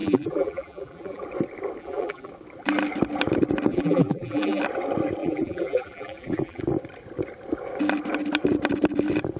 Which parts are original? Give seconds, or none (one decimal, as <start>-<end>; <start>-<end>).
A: 1.2-1.8; 2.3-3.7; 4.6-5.2; 6.6-9.4